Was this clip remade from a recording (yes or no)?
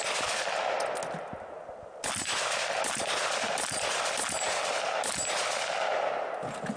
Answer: no